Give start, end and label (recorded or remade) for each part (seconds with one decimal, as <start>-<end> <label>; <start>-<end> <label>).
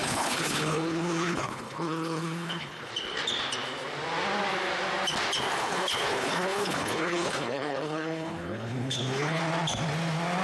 0.0-2.9 remade; 2.9-5.6 recorded; 5.6-9.4 remade; 9.4-10.4 recorded